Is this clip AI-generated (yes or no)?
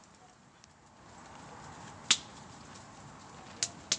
no